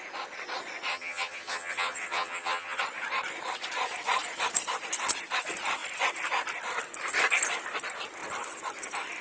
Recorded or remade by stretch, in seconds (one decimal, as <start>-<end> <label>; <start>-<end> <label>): 0.0-0.9 recorded; 0.9-2.8 remade; 2.8-9.2 recorded